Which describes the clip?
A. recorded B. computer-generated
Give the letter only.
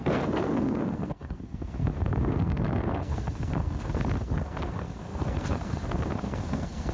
B